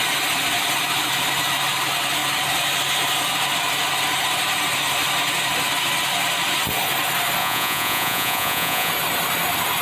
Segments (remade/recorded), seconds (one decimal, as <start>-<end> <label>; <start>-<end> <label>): 0.0-7.4 recorded; 7.4-8.9 remade; 8.9-9.8 recorded